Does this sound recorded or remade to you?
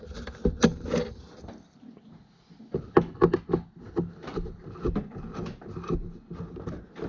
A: recorded